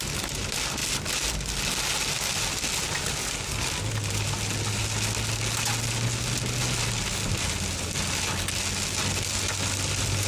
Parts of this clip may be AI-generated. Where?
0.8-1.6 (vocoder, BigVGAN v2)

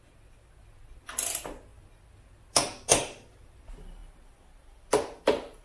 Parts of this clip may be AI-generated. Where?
none

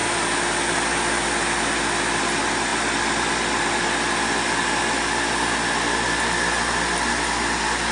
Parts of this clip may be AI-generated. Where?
none